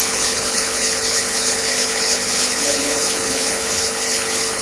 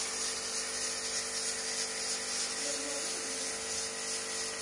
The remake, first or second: first